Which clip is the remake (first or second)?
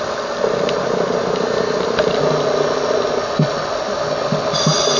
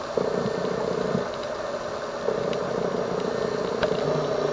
first